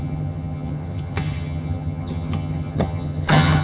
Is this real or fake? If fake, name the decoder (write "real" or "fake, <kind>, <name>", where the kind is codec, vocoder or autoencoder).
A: fake, vocoder, HiFi-GAN